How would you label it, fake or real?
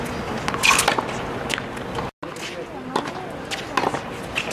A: real